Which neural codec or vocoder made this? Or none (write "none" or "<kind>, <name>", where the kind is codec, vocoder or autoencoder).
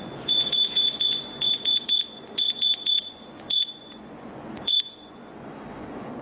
vocoder, Vocos